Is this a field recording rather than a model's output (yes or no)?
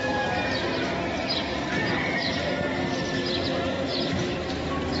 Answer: yes